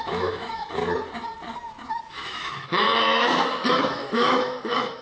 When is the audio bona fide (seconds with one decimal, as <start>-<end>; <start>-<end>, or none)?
0.8-2.1